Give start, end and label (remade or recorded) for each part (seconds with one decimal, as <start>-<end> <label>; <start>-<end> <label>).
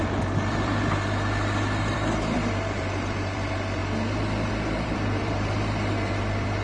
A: 0.0-3.8 remade; 3.8-4.5 recorded; 4.5-6.6 remade